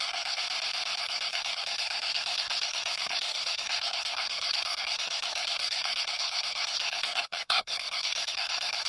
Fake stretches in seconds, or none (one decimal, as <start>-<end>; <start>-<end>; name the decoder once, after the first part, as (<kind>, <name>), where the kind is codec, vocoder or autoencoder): 0.0-0.4 (codec, SNAC); 1.0-8.9